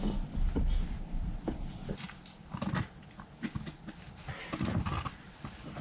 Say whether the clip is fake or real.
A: real